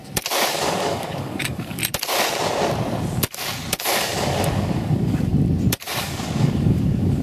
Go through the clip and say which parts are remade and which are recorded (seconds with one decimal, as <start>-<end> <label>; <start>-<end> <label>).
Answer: 0.0-0.5 recorded; 0.5-1.8 remade; 1.8-3.8 recorded; 3.8-5.3 remade; 5.3-6.0 recorded; 6.0-7.2 remade